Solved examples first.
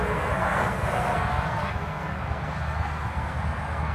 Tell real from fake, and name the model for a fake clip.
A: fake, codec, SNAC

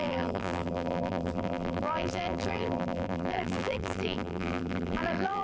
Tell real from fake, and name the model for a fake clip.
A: fake, vocoder, BigVGAN v2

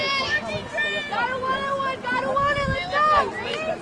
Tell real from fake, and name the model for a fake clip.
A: real